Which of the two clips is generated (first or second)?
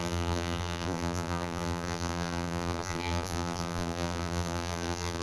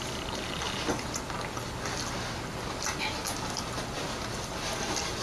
first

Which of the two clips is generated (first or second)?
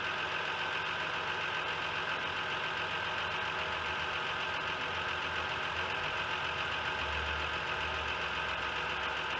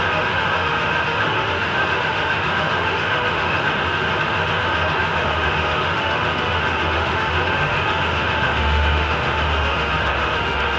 second